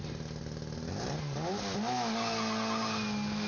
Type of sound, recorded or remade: recorded